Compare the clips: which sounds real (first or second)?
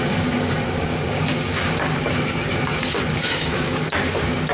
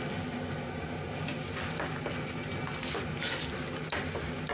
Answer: second